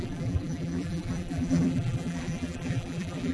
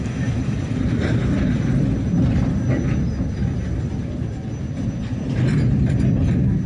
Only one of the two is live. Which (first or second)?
second